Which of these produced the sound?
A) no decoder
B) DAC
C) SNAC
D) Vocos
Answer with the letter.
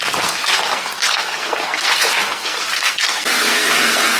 C